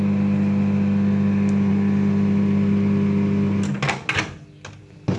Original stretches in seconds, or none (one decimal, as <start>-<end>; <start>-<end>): 0.0-5.2